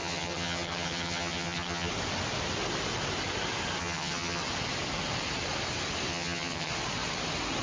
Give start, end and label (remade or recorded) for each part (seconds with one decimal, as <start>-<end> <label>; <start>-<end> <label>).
0.0-1.9 remade; 1.9-3.8 recorded; 3.8-4.4 remade; 4.4-6.1 recorded; 6.1-6.7 remade; 6.7-7.6 recorded